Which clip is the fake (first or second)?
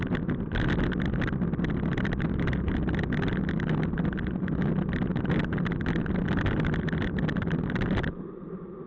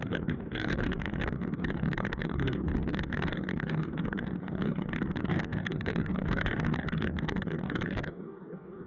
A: second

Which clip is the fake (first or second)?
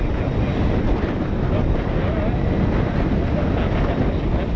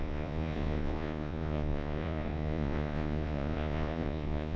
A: second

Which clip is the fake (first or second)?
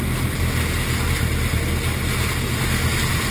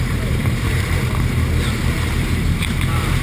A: second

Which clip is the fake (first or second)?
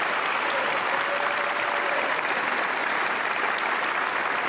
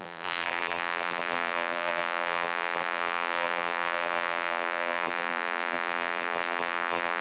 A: second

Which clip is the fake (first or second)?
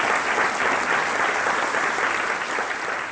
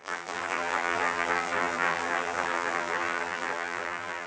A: second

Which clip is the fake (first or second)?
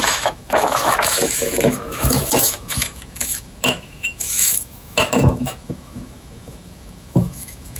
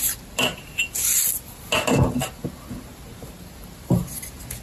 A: first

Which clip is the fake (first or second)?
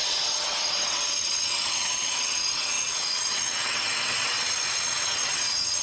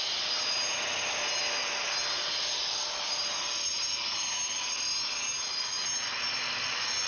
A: first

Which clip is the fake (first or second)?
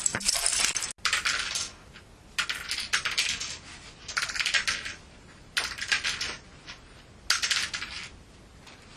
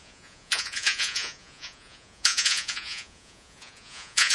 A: second